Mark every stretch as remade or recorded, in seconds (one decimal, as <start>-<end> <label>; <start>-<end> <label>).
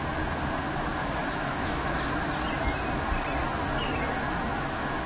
0.0-1.0 recorded; 1.0-2.0 remade; 2.0-5.1 recorded